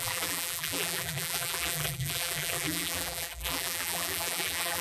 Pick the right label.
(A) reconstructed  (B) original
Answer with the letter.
A